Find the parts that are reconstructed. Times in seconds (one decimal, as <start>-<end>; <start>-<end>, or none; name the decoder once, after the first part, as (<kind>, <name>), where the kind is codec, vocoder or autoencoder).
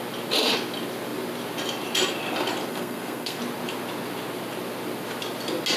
2.7-3.4 (codec, SNAC)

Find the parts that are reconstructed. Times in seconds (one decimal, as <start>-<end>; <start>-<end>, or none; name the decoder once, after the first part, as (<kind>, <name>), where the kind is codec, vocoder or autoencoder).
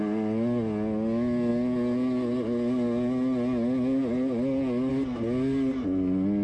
none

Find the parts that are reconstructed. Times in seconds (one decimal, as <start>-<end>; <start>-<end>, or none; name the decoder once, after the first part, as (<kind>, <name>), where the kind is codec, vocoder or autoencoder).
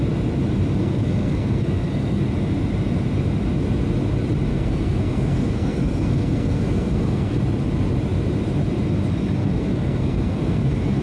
0.8-2.2 (codec, SNAC); 4.5-7.4; 9.4-11.0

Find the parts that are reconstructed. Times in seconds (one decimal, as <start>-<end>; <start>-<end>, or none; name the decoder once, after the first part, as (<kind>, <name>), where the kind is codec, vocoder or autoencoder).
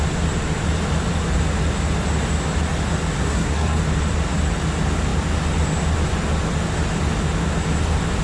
3.2-3.8 (codec, SNAC)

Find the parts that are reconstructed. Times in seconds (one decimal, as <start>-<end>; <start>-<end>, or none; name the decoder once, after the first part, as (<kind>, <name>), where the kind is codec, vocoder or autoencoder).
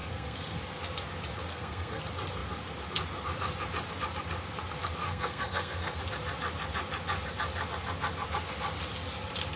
0.0-0.6 (codec, SNAC); 1.5-2.0; 5.0-6.0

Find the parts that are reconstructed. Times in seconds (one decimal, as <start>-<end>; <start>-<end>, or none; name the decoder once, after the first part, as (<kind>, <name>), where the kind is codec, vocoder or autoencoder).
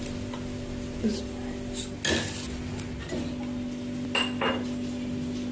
none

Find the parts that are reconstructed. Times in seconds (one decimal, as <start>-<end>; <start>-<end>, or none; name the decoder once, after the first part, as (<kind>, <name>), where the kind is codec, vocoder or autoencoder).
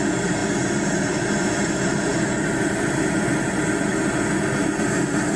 none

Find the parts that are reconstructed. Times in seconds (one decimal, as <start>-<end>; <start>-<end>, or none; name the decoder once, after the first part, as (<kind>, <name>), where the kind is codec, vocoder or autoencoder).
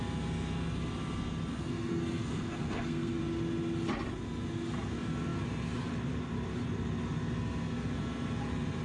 1.5-3.2 (codec, SNAC)